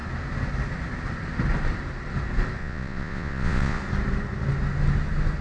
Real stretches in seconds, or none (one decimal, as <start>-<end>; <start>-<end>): 0.0-2.6; 3.8-5.4